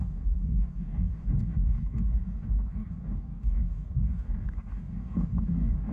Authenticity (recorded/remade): remade